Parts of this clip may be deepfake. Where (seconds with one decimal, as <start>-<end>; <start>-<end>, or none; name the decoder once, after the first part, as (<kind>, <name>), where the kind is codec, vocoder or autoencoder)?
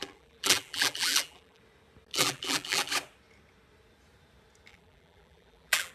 0.0-1.6 (vocoder, BigVGAN v2); 2.1-2.9; 4.7-5.9